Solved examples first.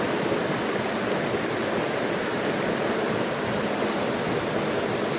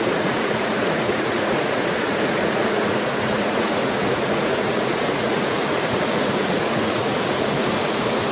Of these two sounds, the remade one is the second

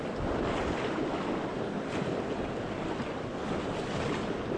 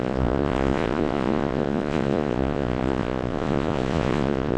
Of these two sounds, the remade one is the second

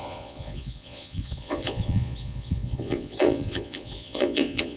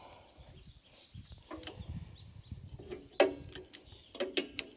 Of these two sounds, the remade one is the first